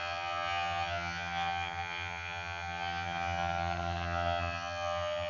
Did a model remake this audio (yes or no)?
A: yes